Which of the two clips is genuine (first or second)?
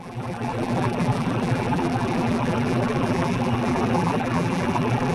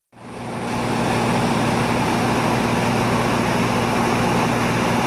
second